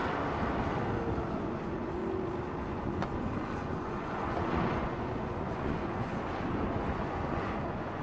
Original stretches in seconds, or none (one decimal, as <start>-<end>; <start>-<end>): 0.0-1.3; 2.0-2.6